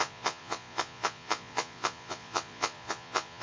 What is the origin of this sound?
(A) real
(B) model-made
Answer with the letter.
B